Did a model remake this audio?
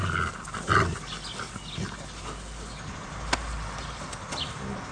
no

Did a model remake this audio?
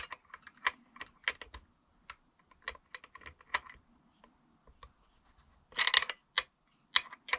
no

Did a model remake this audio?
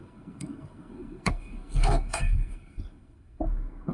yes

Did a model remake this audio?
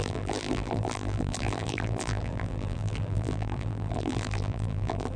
yes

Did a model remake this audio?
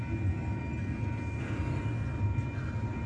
no